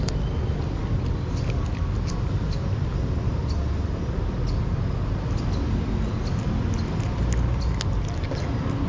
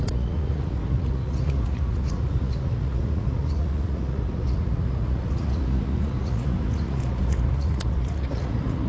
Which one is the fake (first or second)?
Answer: second